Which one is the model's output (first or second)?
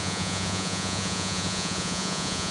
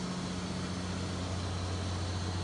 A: first